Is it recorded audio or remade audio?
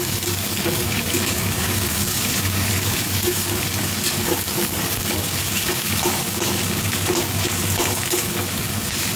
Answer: remade